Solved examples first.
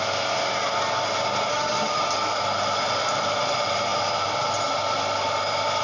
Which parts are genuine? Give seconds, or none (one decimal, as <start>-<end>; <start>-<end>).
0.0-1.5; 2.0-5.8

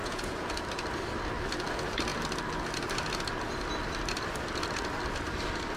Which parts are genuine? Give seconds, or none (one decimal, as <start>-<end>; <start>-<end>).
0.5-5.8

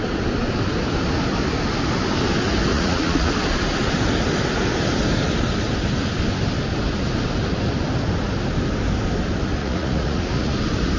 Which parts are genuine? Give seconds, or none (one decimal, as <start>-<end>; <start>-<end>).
0.0-2.7; 3.3-9.6; 10.5-11.0